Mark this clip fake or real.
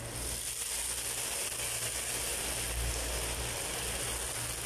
real